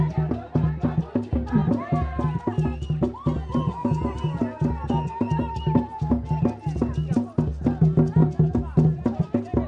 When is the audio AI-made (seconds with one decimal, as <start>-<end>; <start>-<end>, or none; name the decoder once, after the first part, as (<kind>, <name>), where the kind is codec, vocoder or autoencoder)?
8.2-9.2 (vocoder, BigVGAN v2)